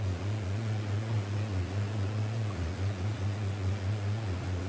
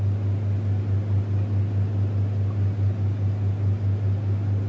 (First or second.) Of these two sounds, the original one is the second